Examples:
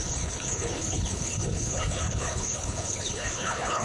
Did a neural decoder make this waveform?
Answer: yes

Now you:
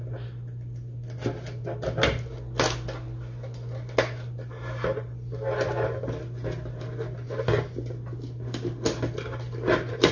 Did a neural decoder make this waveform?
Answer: no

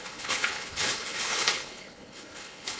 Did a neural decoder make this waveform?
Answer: yes